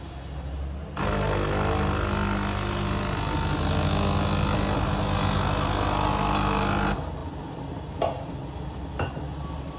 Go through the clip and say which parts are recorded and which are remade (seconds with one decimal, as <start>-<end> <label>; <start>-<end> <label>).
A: 0.0-9.8 recorded